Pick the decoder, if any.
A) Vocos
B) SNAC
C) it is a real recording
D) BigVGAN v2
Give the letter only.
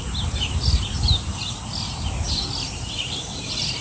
C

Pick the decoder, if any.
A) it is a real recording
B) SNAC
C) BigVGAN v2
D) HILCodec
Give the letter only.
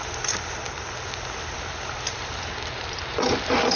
C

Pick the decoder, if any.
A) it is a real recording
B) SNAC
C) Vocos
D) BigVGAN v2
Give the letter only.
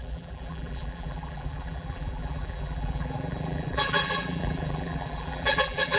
D